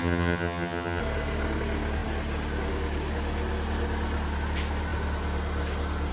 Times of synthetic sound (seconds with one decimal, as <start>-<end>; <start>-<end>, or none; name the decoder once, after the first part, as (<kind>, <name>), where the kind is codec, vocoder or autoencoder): 0.0-1.0 (vocoder, HiFi-GAN)